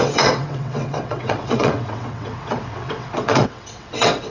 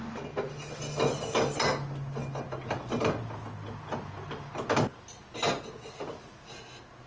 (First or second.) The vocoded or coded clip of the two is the first